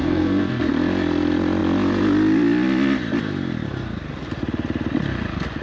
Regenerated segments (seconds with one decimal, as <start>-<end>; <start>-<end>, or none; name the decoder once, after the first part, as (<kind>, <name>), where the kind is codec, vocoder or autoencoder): 0.0-0.7 (codec, SNAC)